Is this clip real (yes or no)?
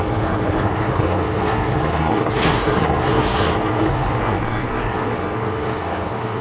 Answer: no